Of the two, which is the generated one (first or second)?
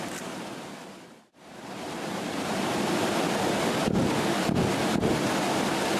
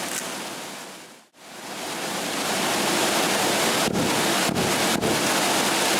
first